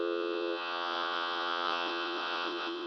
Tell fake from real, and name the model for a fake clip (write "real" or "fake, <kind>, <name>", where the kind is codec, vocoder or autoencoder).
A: fake, vocoder, WaveNeXt